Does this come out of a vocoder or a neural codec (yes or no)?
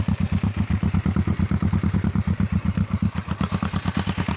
no